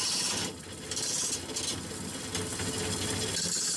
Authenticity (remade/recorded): recorded